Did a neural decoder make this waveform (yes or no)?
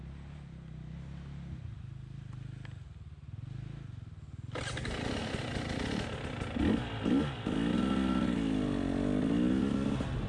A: no